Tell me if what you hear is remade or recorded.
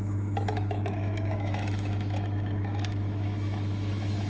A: remade